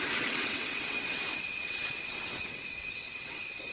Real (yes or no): no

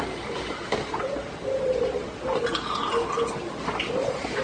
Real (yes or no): yes